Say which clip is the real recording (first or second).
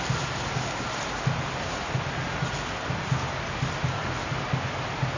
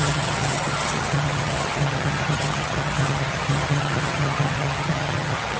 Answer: first